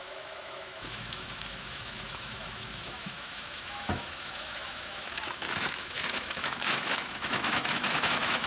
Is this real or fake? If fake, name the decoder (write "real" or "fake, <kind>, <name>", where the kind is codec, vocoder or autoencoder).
fake, autoencoder, DAC-VAE